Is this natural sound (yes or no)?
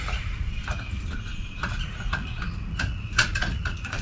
no